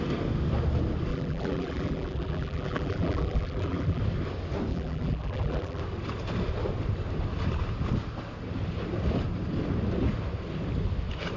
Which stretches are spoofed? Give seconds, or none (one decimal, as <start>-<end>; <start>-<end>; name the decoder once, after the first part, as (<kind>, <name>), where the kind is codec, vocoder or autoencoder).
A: 1.1-4.0 (vocoder, BigVGAN v2); 4.7-5.8